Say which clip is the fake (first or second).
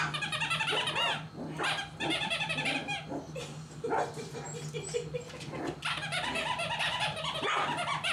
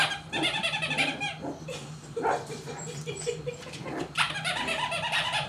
second